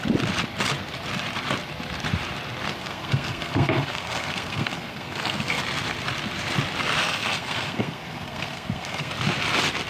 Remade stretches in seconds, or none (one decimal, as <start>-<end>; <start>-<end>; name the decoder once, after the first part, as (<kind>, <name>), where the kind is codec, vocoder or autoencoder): 2.7-5.6 (codec, SNAC); 7.0-9.1